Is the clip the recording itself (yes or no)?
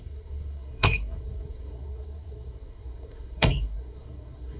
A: no